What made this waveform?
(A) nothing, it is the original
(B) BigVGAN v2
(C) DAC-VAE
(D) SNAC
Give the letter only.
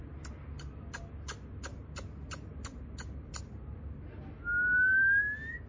A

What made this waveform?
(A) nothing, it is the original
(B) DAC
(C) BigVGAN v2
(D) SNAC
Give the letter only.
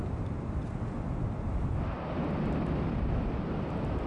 A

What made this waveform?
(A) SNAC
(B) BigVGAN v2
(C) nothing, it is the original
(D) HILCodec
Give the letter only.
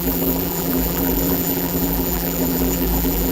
B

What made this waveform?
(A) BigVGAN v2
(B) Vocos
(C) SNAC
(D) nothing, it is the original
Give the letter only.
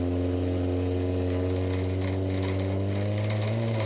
D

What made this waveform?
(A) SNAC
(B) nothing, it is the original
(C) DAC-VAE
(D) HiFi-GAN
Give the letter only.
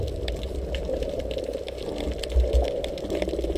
B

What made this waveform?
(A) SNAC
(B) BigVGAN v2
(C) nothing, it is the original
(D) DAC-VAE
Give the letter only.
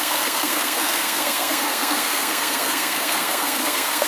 A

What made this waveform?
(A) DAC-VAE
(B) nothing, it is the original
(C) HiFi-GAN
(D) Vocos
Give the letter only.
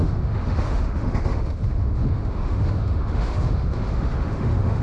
A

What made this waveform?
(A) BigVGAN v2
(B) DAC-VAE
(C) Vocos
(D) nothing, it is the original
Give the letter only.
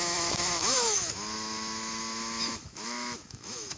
B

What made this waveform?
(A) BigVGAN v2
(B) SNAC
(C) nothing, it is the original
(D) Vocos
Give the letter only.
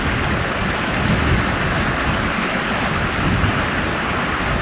C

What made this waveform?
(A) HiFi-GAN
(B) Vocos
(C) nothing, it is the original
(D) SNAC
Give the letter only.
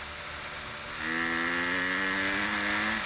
C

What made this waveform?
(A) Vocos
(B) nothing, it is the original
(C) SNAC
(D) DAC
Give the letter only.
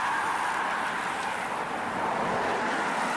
B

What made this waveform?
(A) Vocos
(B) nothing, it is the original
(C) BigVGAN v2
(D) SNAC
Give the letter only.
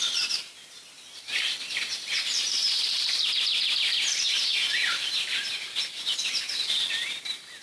C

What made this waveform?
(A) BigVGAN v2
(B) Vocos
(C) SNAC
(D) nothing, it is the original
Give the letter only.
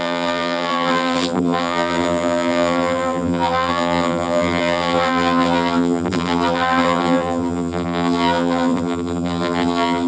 A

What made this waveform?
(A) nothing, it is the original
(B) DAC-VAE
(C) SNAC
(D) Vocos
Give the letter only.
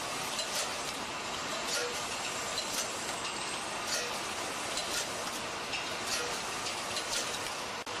A